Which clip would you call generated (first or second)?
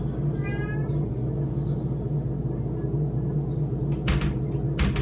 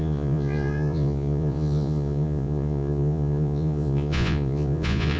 second